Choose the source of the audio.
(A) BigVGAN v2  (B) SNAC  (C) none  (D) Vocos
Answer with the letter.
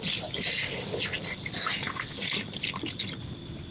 C